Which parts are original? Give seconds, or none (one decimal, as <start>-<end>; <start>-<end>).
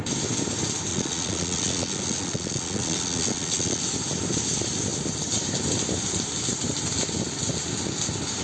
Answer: 0.0-0.9; 3.8-8.4